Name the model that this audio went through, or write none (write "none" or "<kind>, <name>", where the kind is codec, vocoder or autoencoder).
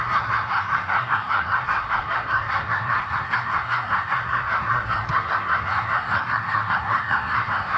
codec, SNAC